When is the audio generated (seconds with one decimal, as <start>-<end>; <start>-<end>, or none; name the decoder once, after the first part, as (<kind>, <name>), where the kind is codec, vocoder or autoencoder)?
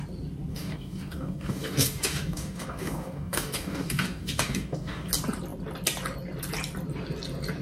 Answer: 0.5-5.1 (codec, DAC)